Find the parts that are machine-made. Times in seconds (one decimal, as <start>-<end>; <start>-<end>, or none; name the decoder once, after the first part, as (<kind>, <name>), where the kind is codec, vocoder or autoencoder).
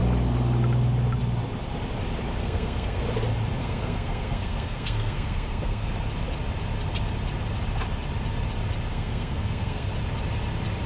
2.4-3.0 (codec, SNAC); 3.6-5.9; 8.9-9.9